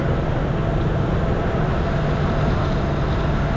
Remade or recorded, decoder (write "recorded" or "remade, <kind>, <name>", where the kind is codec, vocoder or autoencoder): recorded